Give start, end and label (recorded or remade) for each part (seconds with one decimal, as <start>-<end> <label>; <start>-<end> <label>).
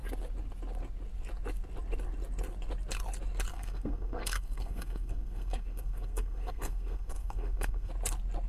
0.0-3.5 recorded; 3.5-7.9 remade; 7.9-8.5 recorded